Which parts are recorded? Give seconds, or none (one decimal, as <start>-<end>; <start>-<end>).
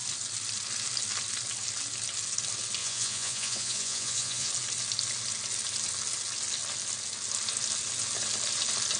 0.0-2.8; 4.5-9.0